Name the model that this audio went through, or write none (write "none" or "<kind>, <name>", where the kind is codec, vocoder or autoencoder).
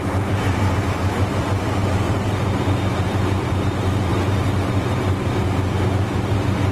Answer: vocoder, BigVGAN v2